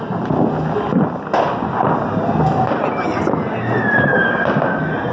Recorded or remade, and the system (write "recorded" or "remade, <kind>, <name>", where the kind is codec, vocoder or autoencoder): recorded